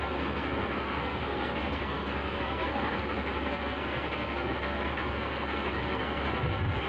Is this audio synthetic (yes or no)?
yes